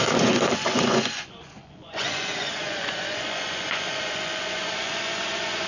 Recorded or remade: remade